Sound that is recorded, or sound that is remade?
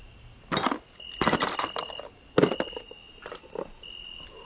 recorded